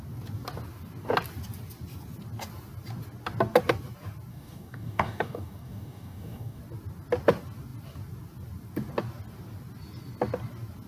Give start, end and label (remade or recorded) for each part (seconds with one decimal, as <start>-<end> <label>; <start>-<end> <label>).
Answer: 0.0-4.3 recorded; 4.3-6.6 remade; 6.6-10.9 recorded

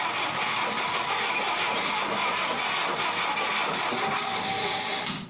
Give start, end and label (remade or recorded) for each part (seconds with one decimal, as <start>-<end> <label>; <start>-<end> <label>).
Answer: 0.0-5.3 recorded

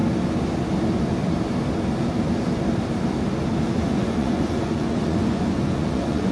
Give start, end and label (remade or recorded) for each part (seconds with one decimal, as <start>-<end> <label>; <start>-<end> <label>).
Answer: 0.0-3.8 recorded; 3.8-6.3 remade

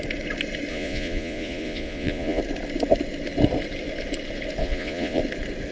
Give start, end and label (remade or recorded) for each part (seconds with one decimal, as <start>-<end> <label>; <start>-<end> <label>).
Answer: 0.0-0.7 recorded; 0.7-2.4 remade; 2.4-4.6 recorded; 4.6-5.2 remade; 5.2-5.7 recorded

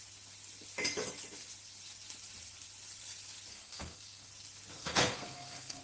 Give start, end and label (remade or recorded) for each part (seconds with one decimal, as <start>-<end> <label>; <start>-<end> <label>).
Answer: 0.0-3.5 recorded; 3.5-4.3 remade; 4.3-4.8 recorded; 4.8-5.8 remade